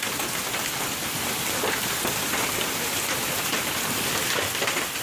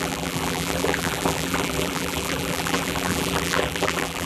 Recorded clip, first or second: first